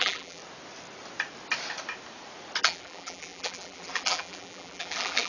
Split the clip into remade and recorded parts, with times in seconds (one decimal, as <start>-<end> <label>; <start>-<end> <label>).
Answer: 0.0-0.4 remade; 0.4-2.6 recorded; 2.6-5.3 remade